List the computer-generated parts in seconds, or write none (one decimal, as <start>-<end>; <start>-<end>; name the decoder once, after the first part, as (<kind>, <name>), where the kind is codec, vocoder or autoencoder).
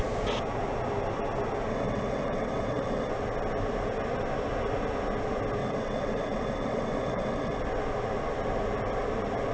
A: 1.7-3.1 (vocoder, WaveNeXt); 5.6-7.6